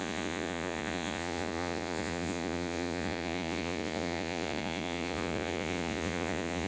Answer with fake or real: fake